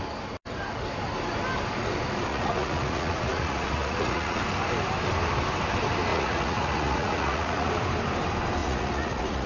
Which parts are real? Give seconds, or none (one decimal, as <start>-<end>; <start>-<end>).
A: 0.0-2.3; 4.4-6.1; 7.7-8.6